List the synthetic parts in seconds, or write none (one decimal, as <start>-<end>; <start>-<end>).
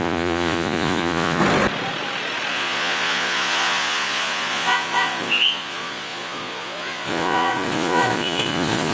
0.0-1.4; 2.5-8.9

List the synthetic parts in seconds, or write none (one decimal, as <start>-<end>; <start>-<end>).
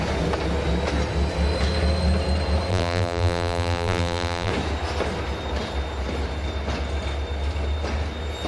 2.7-4.5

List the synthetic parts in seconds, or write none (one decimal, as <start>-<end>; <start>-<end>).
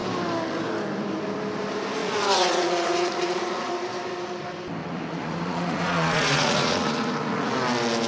2.0-3.7; 4.8-7.5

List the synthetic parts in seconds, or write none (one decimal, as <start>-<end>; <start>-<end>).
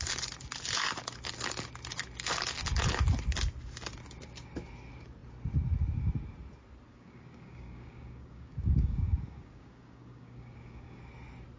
6.9-11.0